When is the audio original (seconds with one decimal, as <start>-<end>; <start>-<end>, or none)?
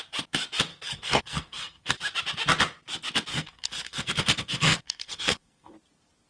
0.0-0.7; 2.0-3.3; 5.7-6.3